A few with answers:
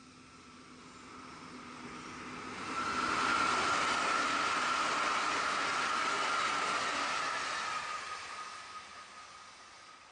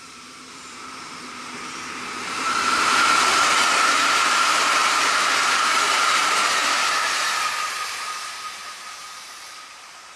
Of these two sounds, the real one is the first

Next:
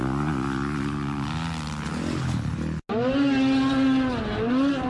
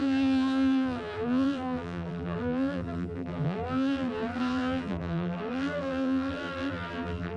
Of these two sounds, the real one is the first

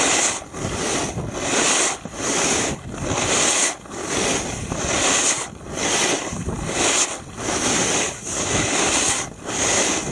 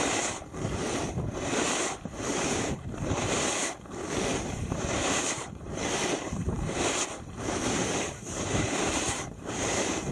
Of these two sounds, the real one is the first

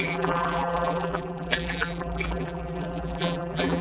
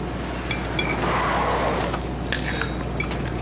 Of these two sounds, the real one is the second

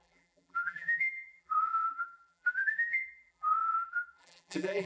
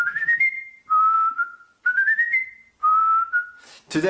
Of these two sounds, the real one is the second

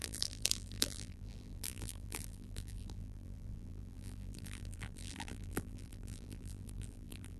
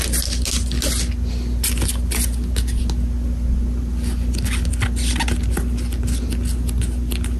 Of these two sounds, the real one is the second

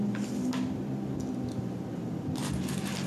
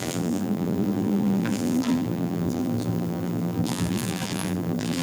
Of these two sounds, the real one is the first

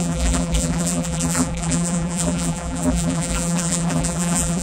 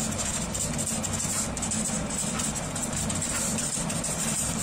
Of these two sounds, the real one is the second